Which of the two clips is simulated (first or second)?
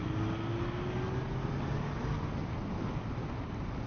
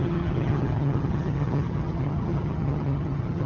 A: second